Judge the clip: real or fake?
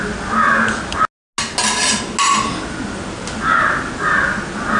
real